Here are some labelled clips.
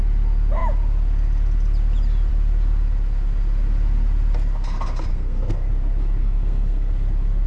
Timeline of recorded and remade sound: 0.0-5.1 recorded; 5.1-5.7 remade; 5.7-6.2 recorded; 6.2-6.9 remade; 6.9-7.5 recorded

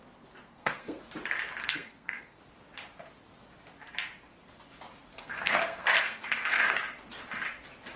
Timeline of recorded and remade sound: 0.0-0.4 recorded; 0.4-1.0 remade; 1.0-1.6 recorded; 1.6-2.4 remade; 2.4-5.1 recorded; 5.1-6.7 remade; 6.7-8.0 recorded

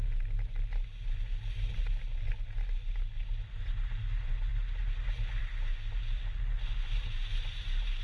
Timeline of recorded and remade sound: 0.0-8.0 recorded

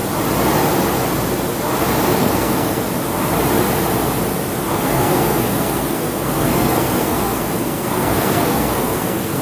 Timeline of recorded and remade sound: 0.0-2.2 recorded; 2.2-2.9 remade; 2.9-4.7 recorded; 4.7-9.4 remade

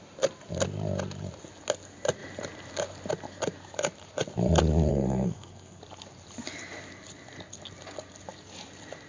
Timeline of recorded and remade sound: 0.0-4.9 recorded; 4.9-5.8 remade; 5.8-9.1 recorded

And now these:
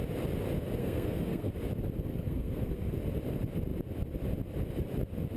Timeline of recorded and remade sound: 0.0-0.8 recorded; 0.8-1.5 remade; 1.5-2.1 recorded; 2.1-2.9 remade; 2.9-5.4 recorded

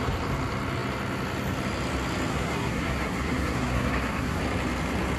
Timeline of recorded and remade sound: 0.0-2.3 recorded; 2.3-4.4 remade; 4.4-5.2 recorded